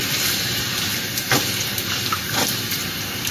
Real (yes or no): no